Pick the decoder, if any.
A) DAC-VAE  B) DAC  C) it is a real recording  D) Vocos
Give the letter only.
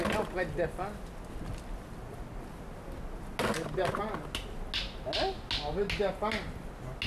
C